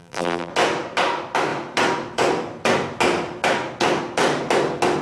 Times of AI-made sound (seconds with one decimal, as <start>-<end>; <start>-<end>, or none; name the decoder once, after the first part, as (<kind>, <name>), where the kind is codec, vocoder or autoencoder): 0.0-0.5 (vocoder, BigVGAN v2)